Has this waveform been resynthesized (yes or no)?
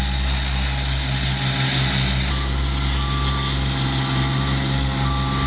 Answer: no